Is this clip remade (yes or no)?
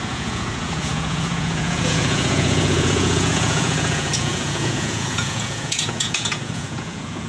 yes